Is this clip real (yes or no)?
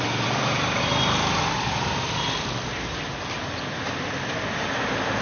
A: yes